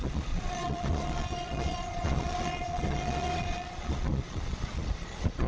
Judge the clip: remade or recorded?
remade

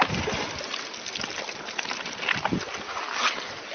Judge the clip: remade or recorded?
recorded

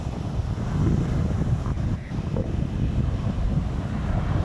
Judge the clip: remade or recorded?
recorded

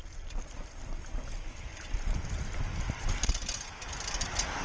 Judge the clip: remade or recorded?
recorded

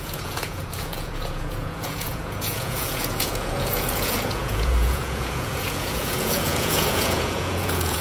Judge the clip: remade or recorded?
remade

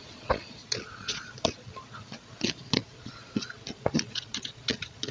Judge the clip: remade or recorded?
remade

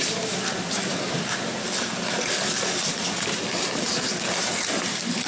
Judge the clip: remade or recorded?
recorded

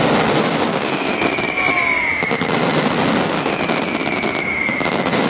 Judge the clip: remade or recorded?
recorded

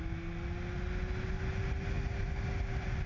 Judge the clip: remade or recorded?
recorded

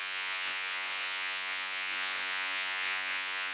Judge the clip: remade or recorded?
remade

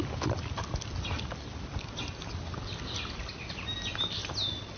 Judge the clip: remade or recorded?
recorded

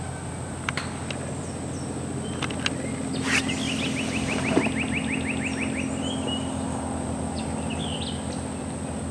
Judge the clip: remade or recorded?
recorded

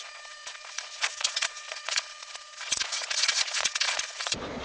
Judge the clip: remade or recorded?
remade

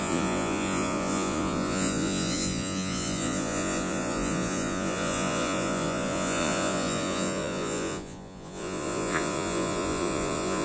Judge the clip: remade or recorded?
remade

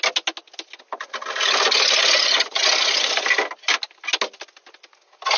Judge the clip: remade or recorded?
recorded